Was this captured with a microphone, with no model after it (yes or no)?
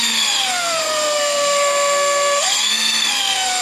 no